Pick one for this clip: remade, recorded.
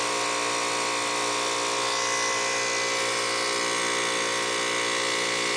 recorded